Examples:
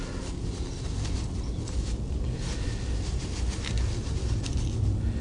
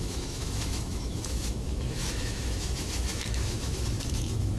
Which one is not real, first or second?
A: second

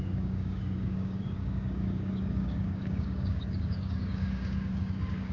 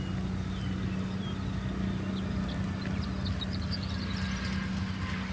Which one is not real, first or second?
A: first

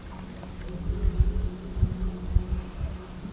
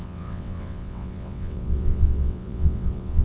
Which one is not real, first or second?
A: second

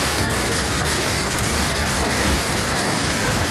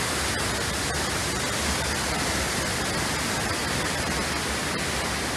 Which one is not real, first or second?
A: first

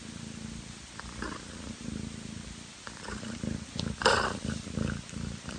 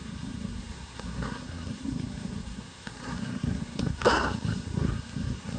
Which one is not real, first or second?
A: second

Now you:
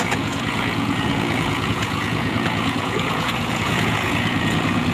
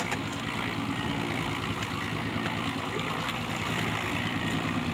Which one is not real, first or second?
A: first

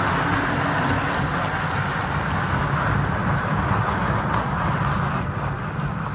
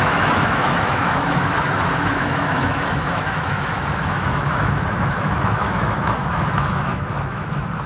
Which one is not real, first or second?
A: second